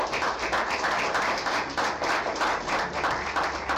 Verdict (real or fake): real